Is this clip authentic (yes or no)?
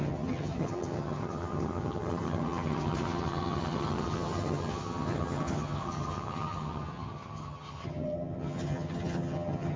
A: no